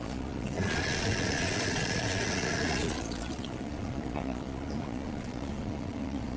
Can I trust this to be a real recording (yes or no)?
no